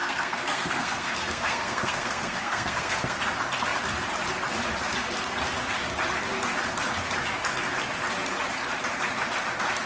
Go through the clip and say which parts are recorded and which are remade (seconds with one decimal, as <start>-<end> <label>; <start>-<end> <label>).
0.0-3.2 remade; 3.2-9.9 recorded